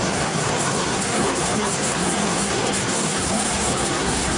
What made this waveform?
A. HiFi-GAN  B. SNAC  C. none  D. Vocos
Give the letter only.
B